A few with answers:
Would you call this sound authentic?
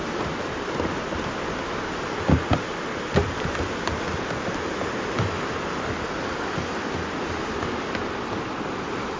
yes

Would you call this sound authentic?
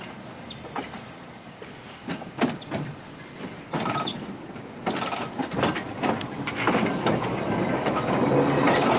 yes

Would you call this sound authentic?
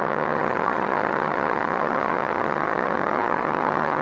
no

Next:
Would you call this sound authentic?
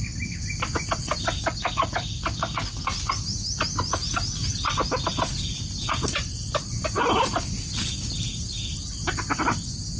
yes